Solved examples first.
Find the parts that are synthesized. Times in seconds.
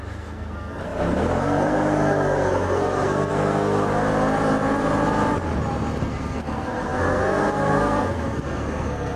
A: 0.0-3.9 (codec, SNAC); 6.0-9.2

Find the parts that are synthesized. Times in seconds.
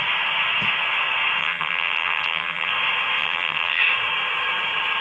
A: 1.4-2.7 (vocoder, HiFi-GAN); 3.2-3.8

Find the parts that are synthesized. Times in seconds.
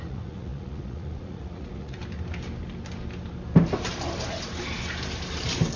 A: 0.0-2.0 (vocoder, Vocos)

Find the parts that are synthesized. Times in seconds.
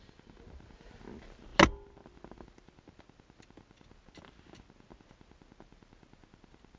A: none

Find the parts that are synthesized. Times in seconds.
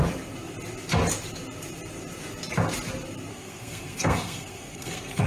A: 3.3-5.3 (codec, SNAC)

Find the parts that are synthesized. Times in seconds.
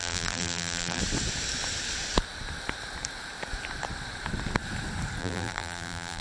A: 0.0-1.0 (vocoder, BigVGAN v2); 5.2-6.2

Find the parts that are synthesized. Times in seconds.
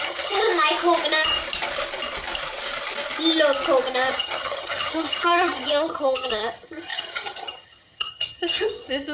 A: 0.0-0.5 (vocoder, HiFi-GAN); 4.1-9.1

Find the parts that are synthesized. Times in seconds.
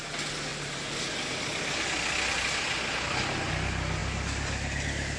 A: none